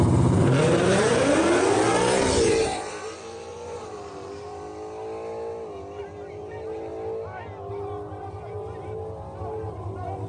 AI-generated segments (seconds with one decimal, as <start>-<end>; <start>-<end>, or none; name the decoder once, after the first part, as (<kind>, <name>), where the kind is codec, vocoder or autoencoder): 0.0-4.7 (vocoder, BigVGAN v2); 6.0-6.9; 7.7-10.3